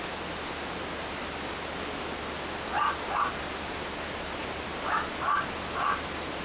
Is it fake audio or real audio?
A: real